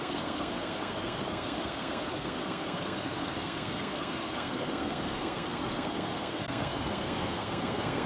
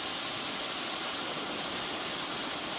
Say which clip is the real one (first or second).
second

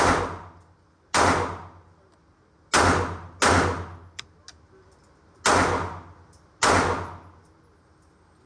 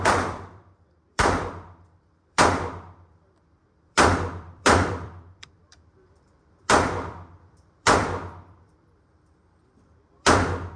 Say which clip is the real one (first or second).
first